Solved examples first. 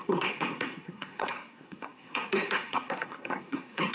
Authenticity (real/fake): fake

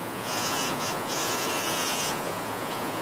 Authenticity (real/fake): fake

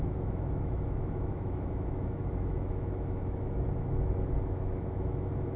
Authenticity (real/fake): fake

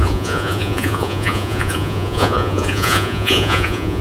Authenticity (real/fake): fake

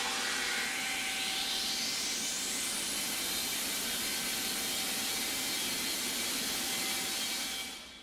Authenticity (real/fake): real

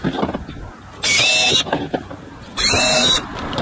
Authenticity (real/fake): real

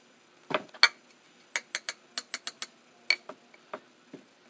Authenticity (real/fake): real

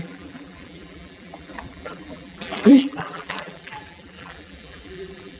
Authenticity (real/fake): fake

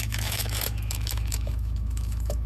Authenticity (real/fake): fake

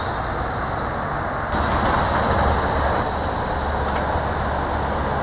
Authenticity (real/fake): real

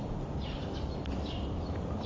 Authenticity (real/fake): real